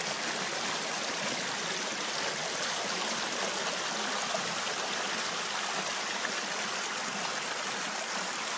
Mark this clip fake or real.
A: real